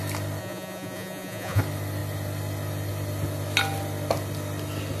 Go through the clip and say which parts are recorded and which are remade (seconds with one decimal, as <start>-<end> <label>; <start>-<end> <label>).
0.0-0.4 recorded; 0.4-1.6 remade; 1.6-5.0 recorded